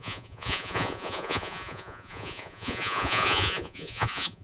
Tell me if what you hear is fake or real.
fake